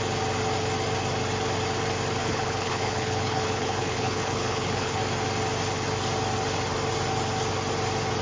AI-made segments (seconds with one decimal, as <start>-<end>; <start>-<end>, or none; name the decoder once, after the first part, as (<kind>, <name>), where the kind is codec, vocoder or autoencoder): 2.2-5.0 (codec, HILCodec)